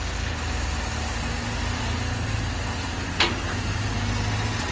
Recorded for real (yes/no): yes